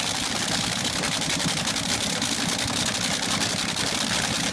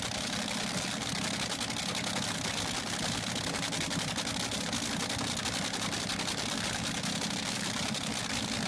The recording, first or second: second